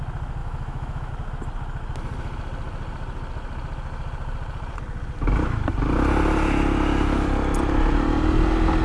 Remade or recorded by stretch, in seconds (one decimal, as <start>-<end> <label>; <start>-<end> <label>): 0.0-0.4 recorded; 0.4-1.1 remade; 1.1-8.8 recorded